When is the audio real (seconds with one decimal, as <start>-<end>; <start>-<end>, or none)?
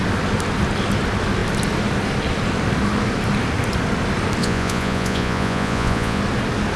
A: 0.0-4.4; 6.2-6.8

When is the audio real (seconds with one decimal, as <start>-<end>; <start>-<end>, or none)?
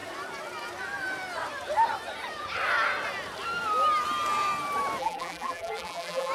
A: 0.0-5.0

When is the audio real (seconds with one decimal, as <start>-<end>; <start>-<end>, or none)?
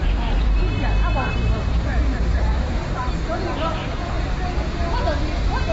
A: 0.6-1.3; 3.8-5.2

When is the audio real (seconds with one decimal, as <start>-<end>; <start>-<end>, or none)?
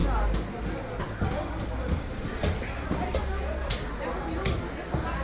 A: 0.0-5.2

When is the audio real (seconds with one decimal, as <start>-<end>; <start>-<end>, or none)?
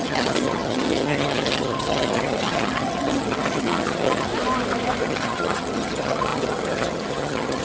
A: 4.3-5.0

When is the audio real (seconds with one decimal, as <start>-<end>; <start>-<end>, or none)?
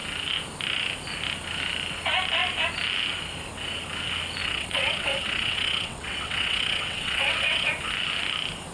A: 0.0-4.4; 7.7-8.7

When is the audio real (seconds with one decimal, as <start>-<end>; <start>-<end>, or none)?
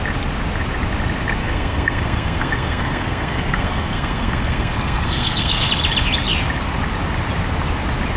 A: 0.0-1.4; 5.7-8.2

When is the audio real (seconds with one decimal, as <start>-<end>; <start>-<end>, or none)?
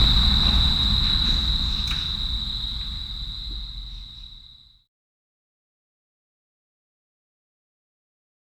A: 0.0-8.4